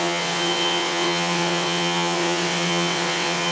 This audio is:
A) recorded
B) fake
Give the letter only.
B